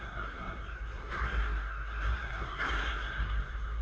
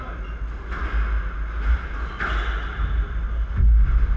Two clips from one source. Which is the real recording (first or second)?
second